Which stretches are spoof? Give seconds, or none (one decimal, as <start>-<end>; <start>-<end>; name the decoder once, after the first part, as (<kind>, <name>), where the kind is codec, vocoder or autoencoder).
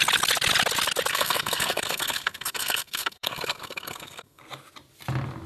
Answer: 1.1-4.4 (codec, SNAC)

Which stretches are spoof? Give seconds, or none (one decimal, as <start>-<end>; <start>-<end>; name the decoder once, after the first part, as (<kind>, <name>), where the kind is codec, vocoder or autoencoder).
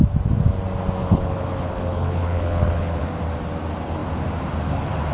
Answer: 1.0-3.1 (codec, HILCodec)